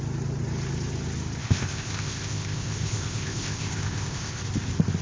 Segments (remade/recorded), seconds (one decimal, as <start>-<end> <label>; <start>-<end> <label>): 0.0-1.4 recorded; 1.4-4.4 remade; 4.4-5.0 recorded